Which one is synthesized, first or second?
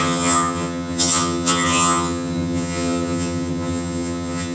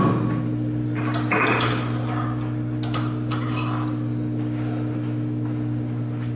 first